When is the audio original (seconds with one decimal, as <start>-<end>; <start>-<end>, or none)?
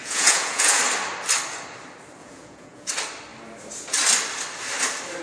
0.8-2.2; 2.9-5.2